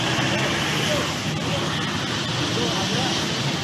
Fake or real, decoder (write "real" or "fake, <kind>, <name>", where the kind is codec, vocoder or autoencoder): real